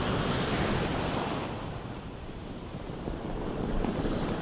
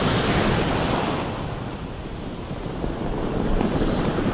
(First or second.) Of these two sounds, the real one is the second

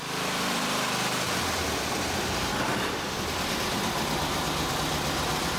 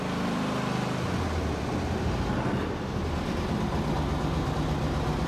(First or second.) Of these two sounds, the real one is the second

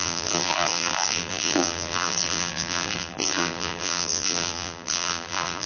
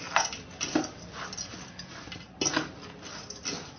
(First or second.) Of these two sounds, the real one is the second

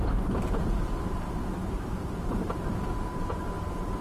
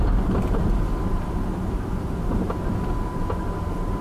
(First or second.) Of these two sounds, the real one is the second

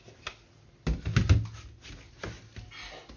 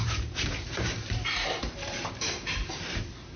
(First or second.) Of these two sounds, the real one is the first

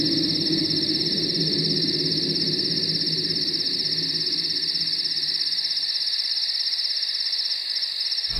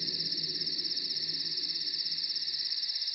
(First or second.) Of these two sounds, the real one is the first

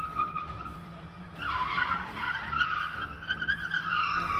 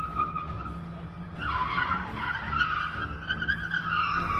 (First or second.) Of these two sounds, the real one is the second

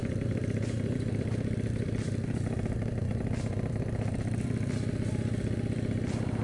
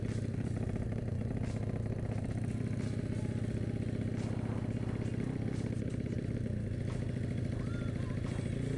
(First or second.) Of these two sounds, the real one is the second